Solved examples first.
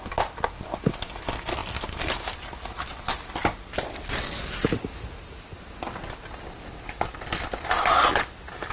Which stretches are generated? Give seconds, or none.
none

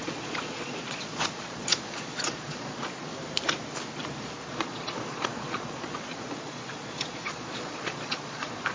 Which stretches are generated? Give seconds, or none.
0.0-3.1 (vocoder, Vocos); 4.5-8.7

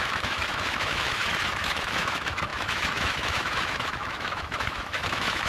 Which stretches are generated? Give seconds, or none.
0.0-5.5 (autoencoder, DAC-VAE)